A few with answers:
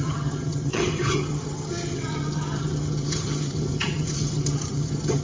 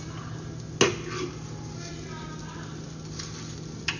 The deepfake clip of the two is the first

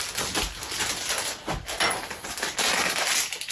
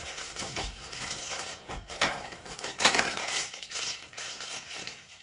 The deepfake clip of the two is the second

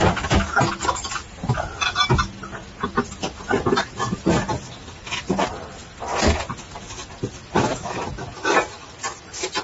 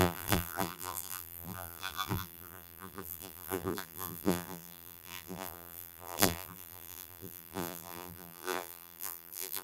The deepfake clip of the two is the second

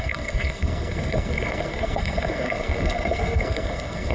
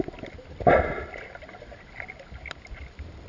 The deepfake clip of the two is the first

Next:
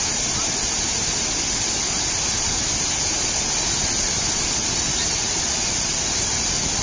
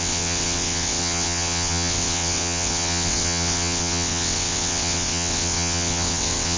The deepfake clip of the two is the second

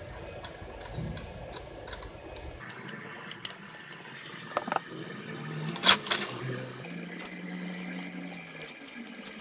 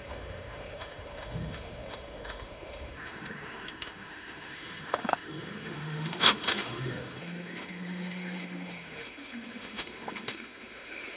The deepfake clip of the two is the second